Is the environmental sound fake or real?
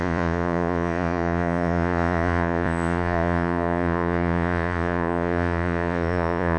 fake